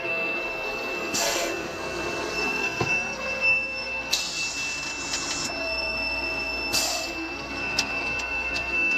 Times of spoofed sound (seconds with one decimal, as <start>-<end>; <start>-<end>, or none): 0.0-4.2; 5.6-9.0